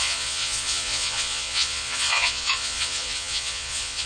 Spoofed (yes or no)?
yes